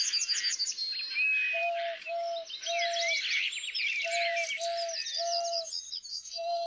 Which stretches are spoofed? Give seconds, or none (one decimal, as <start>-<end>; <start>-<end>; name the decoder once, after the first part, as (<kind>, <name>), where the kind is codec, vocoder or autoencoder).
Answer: 6.1-6.7 (codec, SNAC)